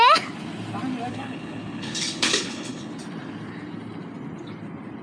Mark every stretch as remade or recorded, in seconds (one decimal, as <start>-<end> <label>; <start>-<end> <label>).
0.0-1.1 recorded; 1.1-2.9 remade; 2.9-5.0 recorded